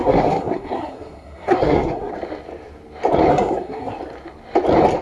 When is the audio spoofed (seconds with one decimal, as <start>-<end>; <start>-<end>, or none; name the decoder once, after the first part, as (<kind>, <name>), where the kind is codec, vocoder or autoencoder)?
0.0-2.1 (codec, SNAC); 3.3-3.9